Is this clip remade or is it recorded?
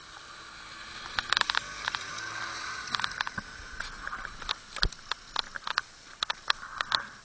recorded